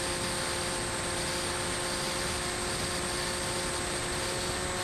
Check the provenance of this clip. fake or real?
real